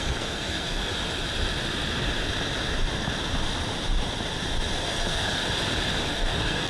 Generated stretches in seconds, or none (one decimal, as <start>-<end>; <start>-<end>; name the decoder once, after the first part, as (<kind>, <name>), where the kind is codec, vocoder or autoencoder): 0.0-0.9 (codec, SNAC); 4.9-5.4; 6.1-6.7